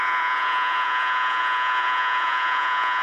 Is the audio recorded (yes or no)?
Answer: no